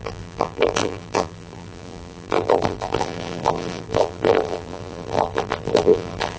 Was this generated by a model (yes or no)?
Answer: yes